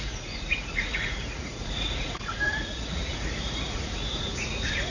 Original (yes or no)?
no